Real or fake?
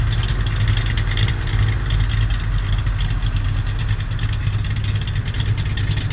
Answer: real